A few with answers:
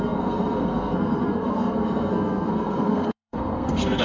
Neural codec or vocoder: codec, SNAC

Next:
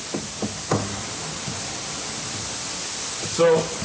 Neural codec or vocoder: none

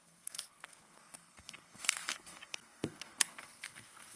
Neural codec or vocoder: codec, SNAC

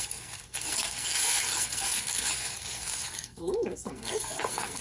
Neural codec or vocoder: codec, SNAC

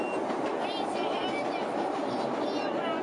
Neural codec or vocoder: none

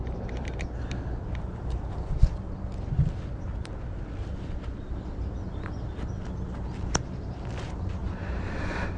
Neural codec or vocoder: none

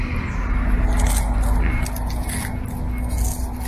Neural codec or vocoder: none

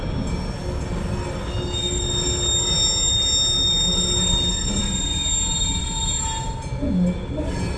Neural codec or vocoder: none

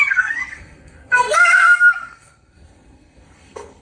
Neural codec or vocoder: codec, SNAC